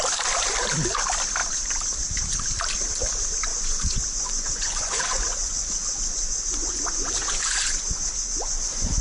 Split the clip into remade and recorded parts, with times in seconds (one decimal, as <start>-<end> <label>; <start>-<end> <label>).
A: 0.0-3.5 recorded; 3.5-9.0 remade